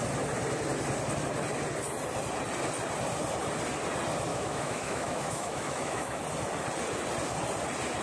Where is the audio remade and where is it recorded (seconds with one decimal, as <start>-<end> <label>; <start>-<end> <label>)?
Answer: 0.0-4.3 recorded; 4.3-6.2 remade; 6.2-8.0 recorded